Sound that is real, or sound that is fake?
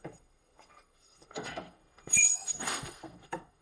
fake